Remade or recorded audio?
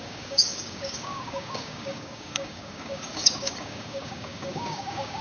remade